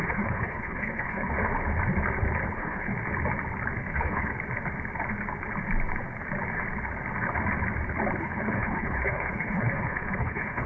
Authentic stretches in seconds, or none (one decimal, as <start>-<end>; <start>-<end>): 1.3-2.5; 2.9-3.9; 4.3-8.2